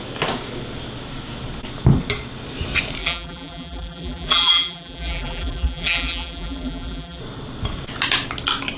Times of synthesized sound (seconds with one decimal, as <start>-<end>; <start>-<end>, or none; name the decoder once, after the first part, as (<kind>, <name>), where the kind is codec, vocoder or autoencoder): 3.0-7.2 (vocoder, BigVGAN v2)